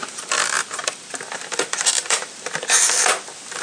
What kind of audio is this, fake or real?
fake